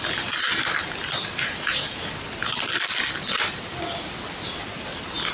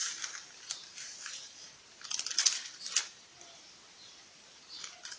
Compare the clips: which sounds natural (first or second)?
first